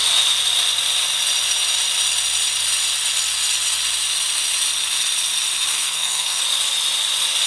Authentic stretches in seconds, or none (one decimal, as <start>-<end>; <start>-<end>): 0.0-5.7; 6.4-7.5